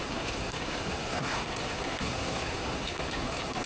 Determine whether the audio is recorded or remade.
remade